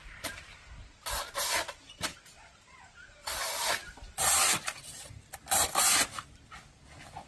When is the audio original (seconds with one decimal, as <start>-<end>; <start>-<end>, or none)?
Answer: 0.0-7.3